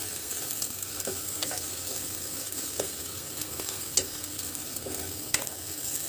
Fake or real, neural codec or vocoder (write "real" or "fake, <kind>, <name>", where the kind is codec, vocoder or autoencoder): fake, codec, SNAC